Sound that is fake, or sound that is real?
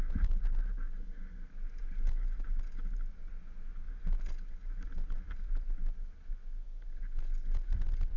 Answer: real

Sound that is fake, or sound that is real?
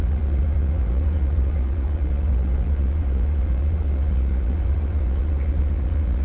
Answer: fake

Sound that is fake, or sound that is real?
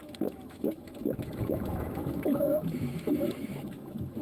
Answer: fake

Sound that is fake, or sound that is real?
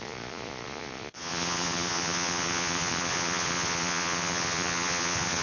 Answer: fake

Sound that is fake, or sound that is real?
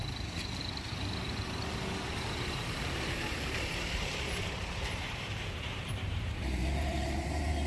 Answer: fake